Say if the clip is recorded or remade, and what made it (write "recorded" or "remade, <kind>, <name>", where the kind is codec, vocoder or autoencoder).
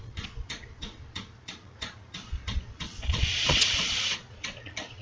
remade, vocoder, Vocos